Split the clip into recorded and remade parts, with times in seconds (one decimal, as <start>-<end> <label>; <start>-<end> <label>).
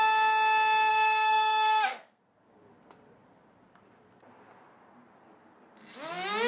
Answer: 0.0-0.9 recorded; 0.9-2.2 remade; 2.2-6.5 recorded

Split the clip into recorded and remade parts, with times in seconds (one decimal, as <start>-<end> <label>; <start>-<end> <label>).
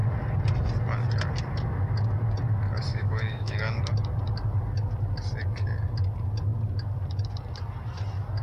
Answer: 0.0-2.9 recorded; 2.9-3.8 remade; 3.8-8.4 recorded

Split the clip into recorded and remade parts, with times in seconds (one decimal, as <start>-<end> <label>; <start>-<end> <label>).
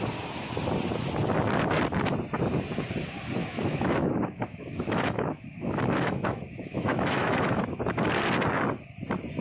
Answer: 0.0-3.4 recorded; 3.4-7.6 remade; 7.6-9.4 recorded